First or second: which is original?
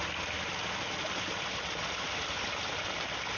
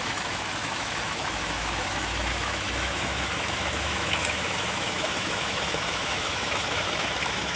first